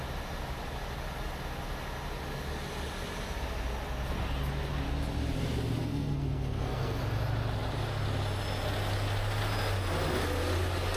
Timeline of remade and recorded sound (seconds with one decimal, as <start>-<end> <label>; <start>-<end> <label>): 0.0-5.8 recorded; 5.8-7.0 remade; 7.0-11.0 recorded